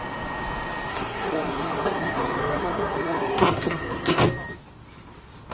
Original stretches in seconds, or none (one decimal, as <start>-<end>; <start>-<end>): 0.0-0.9; 4.2-5.5